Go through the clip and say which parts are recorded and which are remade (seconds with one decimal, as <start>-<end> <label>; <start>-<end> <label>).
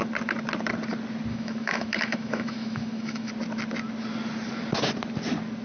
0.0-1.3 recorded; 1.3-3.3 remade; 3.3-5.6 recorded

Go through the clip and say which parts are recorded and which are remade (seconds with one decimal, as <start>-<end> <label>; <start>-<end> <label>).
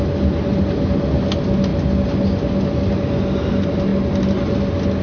0.0-5.0 recorded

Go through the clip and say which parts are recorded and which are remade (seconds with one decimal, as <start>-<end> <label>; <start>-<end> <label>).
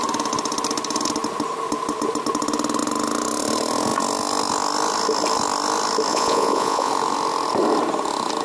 0.0-6.1 recorded; 6.1-6.9 remade; 6.9-8.4 recorded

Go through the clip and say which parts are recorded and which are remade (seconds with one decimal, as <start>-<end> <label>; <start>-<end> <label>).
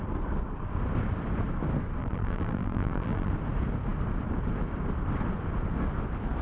0.0-2.0 recorded; 2.0-3.3 remade; 3.3-6.4 recorded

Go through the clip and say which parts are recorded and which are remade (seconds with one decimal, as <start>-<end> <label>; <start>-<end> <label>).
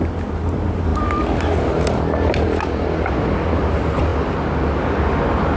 0.0-5.6 recorded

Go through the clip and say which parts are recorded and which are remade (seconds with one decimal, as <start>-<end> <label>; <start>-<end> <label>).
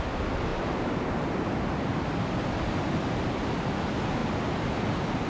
0.0-0.5 recorded; 0.5-3.7 remade; 3.7-5.3 recorded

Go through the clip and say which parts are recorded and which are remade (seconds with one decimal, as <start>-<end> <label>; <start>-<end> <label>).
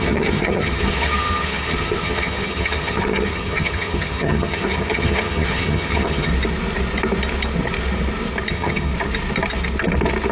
0.0-6.3 remade; 6.3-8.5 recorded; 8.5-8.9 remade; 8.9-10.3 recorded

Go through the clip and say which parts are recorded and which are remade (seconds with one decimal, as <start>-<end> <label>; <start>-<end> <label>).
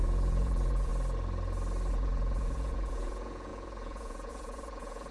0.0-0.9 remade; 0.9-1.9 recorded; 1.9-5.1 remade